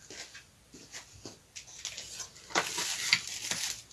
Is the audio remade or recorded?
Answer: recorded